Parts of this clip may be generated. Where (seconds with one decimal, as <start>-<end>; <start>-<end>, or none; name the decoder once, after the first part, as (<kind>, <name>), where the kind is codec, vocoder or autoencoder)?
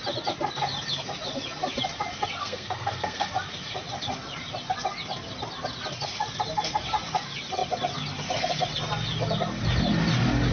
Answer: 2.4-3.3 (codec, SNAC)